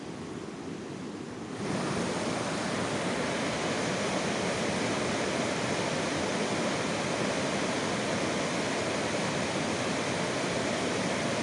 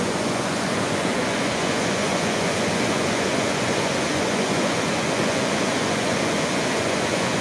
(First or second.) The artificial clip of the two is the second